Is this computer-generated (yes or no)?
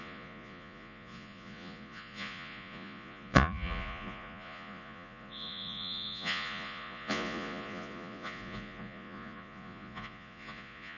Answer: yes